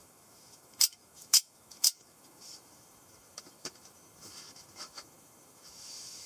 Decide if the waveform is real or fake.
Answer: fake